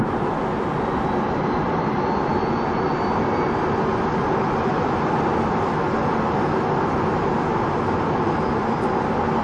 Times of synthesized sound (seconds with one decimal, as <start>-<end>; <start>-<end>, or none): none